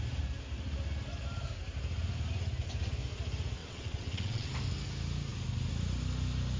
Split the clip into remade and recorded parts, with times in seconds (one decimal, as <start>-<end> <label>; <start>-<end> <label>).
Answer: 0.0-3.6 recorded; 3.6-4.5 remade; 4.5-6.6 recorded